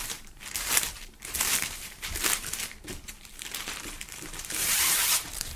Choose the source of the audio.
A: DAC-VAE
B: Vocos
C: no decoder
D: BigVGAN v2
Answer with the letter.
D